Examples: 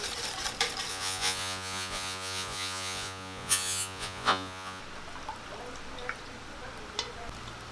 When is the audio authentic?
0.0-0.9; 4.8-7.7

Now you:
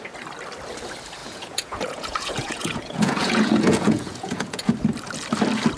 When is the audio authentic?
0.0-1.2; 4.7-5.8

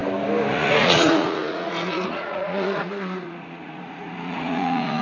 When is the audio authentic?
0.0-0.5

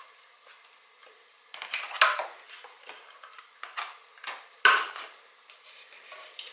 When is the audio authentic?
0.0-6.5

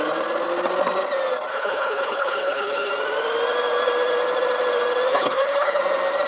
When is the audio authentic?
0.0-1.5; 2.9-5.1; 5.8-6.3

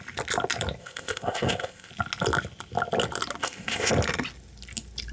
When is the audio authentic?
0.0-0.8; 1.9-3.4; 3.9-5.1

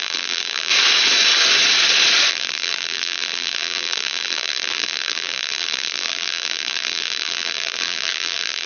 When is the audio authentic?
0.7-2.3

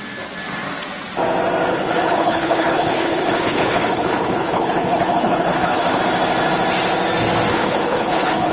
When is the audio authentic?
0.0-1.7; 6.0-7.5